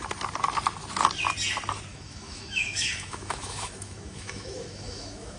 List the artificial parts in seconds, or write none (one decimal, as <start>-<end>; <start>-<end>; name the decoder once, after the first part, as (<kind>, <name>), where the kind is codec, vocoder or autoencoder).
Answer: 1.9-5.4 (autoencoder, DAC-VAE)